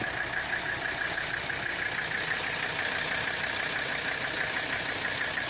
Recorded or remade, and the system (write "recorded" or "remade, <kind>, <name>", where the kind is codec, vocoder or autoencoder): recorded